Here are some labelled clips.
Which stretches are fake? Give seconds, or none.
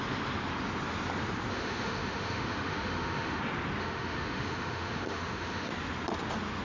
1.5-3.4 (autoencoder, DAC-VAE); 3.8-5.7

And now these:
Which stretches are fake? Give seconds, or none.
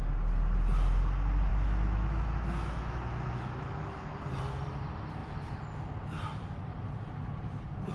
1.5-4.4 (autoencoder, DAC-VAE)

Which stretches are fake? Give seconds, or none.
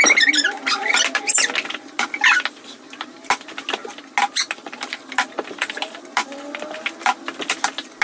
none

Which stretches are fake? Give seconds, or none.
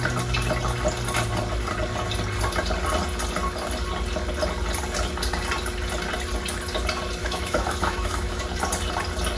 7.2-8.4 (autoencoder, DAC-VAE)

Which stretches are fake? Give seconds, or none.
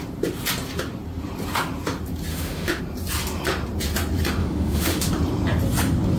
2.3-2.8 (autoencoder, DAC-VAE); 4.4-5.1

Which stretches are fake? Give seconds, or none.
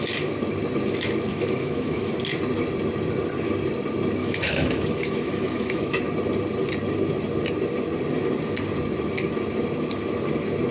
1.3-2.1 (autoencoder, DAC-VAE); 4.2-6.0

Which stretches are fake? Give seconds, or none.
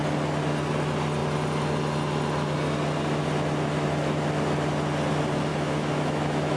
5.5-6.6 (autoencoder, DAC-VAE)